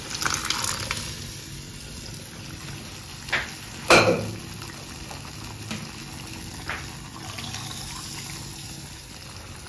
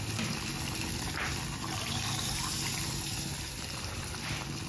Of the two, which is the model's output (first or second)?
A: second